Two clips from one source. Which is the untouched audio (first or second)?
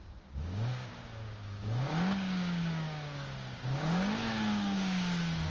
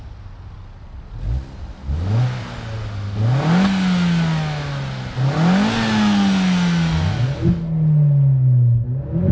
second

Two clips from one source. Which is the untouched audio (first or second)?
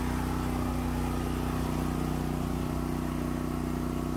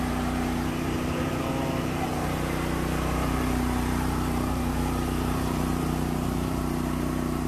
first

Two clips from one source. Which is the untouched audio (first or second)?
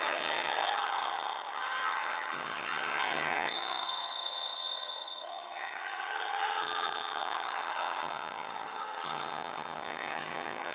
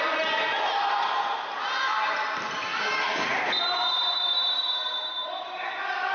second